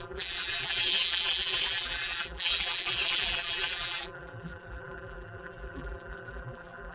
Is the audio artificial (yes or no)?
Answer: yes